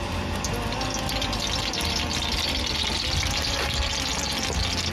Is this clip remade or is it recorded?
recorded